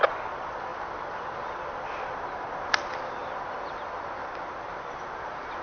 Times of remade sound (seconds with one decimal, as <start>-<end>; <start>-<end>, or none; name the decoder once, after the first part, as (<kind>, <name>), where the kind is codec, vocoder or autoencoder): 3.2-4.5 (vocoder, BigVGAN v2)